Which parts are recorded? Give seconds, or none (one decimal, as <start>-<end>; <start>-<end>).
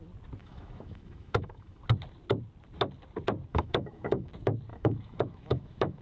0.0-0.4; 1.8-3.5; 4.3-4.7